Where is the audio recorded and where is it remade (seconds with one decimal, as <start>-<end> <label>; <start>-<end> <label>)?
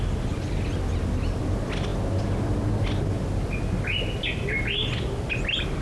0.0-5.8 recorded